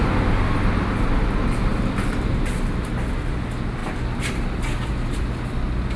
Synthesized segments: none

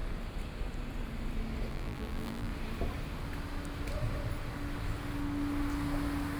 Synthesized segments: 1.7-2.5 (vocoder, BigVGAN v2)

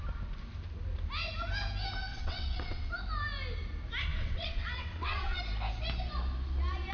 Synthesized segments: 2.1-2.9 (vocoder, WaveNeXt); 4.1-5.4

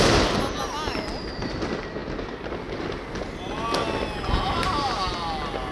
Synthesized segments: none

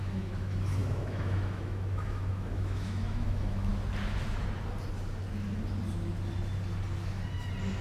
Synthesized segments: 0.0-3.7 (autoencoder, DAC-VAE)

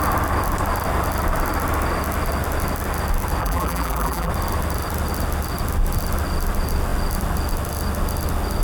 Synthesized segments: 3.4-4.3 (vocoder, BigVGAN v2)